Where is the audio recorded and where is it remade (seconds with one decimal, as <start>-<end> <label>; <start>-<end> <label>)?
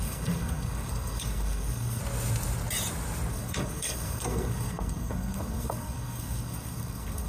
0.0-2.0 remade; 2.0-3.3 recorded; 3.3-7.3 remade